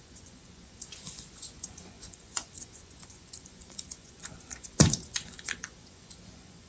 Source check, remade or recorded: remade